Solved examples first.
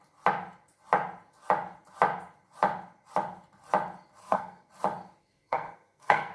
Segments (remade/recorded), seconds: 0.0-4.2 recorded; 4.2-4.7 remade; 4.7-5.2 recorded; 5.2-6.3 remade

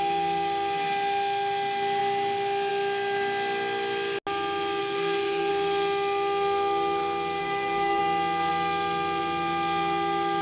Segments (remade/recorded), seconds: 0.0-4.8 recorded; 4.8-5.5 remade; 5.5-7.4 recorded; 7.4-8.0 remade; 8.0-10.4 recorded

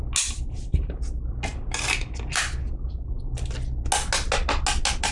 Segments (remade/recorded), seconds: 0.0-5.1 recorded